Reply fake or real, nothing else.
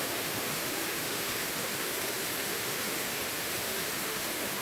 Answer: fake